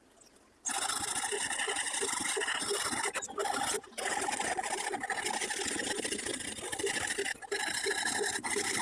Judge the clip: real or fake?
real